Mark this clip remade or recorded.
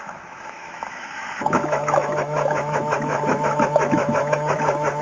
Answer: remade